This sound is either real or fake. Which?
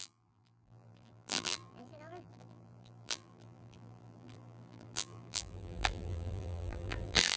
fake